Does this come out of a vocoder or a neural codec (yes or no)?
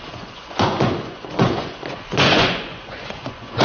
yes